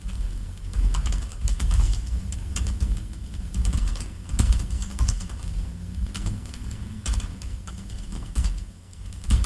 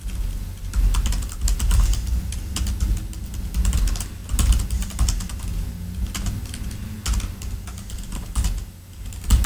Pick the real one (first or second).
second